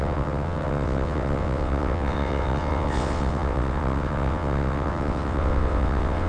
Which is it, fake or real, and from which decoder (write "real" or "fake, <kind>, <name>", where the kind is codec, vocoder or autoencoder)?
fake, vocoder, WaveNeXt